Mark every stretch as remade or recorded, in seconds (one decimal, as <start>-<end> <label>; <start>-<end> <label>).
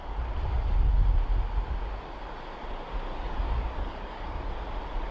0.0-3.1 recorded; 3.1-4.5 remade; 4.5-5.1 recorded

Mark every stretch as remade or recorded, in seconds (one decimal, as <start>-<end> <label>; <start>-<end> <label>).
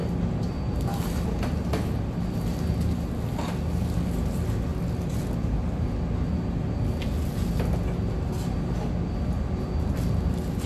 0.0-10.7 recorded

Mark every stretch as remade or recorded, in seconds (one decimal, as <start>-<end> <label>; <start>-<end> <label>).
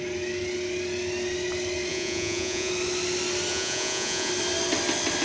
0.0-1.9 recorded; 1.9-2.7 remade; 2.7-3.5 recorded; 3.5-4.3 remade; 4.3-5.2 recorded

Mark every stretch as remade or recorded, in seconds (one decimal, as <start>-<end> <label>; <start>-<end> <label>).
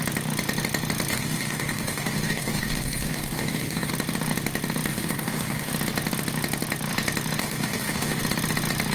0.0-1.1 recorded; 1.1-3.9 remade; 3.9-4.9 recorded; 4.9-5.7 remade; 5.7-7.4 recorded; 7.4-8.2 remade; 8.2-8.9 recorded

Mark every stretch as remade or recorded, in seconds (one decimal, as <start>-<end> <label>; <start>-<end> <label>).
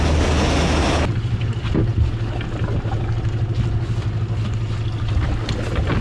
0.0-6.0 recorded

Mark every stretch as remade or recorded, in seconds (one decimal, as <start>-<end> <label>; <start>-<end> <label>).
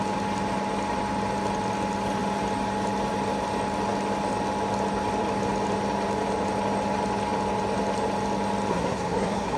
0.0-8.7 recorded; 8.7-9.6 remade